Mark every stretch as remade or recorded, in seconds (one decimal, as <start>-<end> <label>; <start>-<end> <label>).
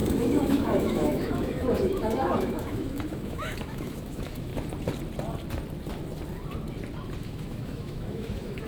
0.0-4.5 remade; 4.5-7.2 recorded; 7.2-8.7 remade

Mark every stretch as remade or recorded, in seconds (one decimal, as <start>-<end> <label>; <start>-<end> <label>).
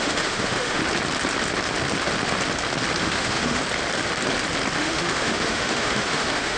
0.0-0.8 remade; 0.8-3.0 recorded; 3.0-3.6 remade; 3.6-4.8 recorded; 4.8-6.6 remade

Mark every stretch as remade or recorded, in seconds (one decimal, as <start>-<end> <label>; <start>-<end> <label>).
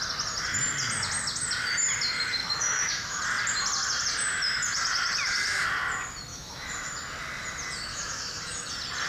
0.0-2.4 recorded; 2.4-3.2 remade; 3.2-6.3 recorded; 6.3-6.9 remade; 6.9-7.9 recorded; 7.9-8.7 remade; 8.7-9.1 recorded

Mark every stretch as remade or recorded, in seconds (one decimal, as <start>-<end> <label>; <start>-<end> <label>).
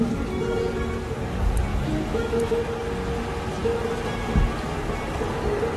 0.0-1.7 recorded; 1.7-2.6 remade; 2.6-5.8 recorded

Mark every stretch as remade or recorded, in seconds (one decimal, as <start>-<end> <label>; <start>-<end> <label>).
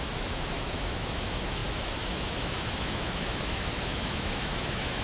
0.0-5.0 remade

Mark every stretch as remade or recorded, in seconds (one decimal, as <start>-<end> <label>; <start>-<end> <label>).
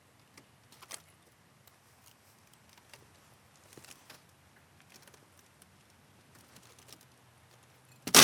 0.0-8.2 recorded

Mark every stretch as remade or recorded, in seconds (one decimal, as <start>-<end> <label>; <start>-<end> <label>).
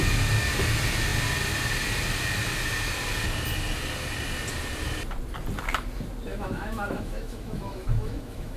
0.0-6.3 recorded; 6.3-8.6 remade